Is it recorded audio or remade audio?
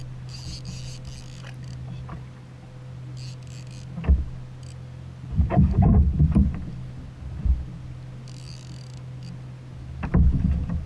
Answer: recorded